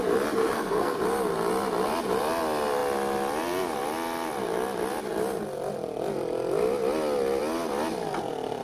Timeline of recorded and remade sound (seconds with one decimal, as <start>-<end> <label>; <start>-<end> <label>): 0.0-0.4 recorded; 0.4-1.0 remade; 1.0-8.6 recorded